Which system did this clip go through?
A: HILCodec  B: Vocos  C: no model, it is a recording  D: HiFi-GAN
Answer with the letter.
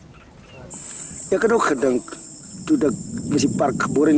C